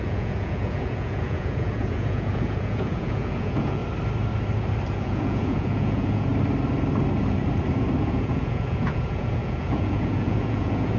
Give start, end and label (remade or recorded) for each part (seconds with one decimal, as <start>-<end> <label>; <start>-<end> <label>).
0.0-3.8 remade; 3.8-4.9 recorded; 4.9-6.3 remade; 6.3-8.0 recorded; 8.0-11.0 remade

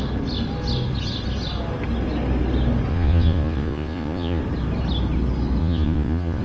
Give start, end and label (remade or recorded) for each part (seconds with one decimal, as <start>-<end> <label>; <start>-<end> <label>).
0.0-2.9 recorded; 2.9-4.4 remade; 4.4-5.6 recorded; 5.6-6.4 remade